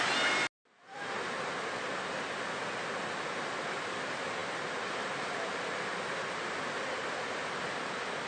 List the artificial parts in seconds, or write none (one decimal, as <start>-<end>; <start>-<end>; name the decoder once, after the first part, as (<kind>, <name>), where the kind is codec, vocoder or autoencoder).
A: none